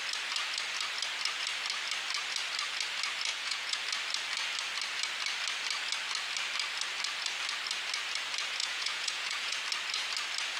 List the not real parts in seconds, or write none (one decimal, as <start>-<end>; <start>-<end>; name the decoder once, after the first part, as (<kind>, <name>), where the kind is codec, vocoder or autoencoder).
3.3-3.8 (vocoder, Vocos); 8.6-9.6